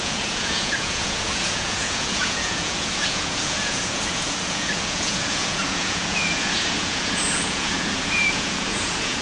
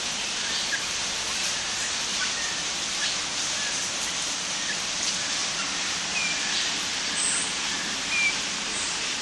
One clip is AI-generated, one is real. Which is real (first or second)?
second